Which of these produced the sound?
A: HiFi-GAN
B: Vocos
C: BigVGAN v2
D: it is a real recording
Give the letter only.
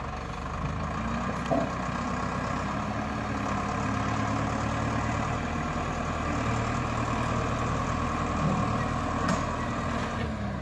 D